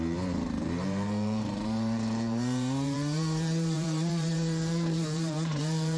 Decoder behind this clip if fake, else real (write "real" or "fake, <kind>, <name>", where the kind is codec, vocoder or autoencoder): fake, vocoder, BigVGAN v2